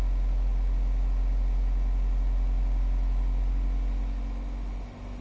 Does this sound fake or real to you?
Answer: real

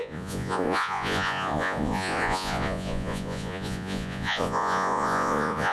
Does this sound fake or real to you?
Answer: fake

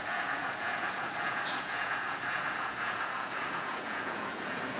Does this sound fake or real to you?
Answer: fake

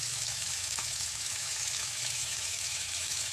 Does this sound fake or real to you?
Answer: fake